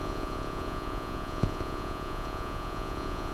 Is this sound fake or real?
fake